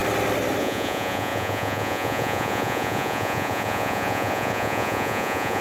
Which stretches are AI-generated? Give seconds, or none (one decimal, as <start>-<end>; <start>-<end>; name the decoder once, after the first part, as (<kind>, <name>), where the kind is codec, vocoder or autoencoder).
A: 0.6-5.6 (vocoder, Vocos)